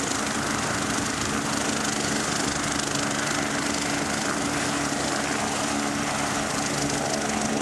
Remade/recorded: recorded